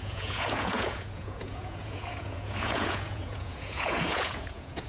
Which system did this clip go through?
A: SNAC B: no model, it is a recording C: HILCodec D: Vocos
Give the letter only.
D